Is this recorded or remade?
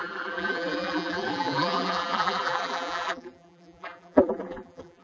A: remade